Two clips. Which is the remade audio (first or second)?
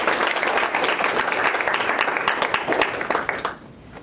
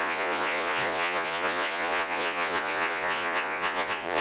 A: second